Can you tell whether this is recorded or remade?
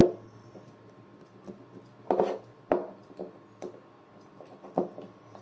recorded